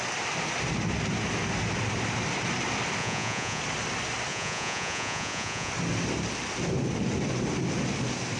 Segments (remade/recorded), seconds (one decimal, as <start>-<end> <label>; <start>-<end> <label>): 0.0-3.0 recorded; 3.0-3.6 remade; 3.6-4.3 recorded; 4.3-5.7 remade; 5.7-8.4 recorded